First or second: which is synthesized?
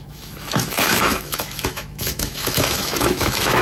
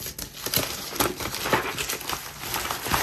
first